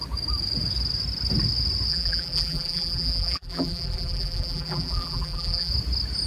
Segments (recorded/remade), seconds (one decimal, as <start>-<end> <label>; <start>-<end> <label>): 0.0-1.9 recorded; 1.9-5.7 remade; 5.7-6.3 recorded